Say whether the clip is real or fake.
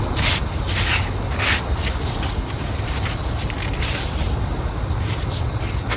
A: real